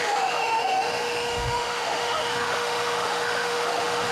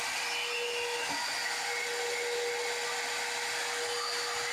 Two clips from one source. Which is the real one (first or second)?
second